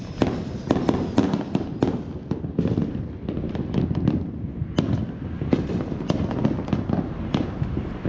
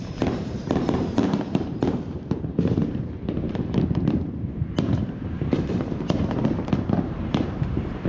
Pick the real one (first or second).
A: first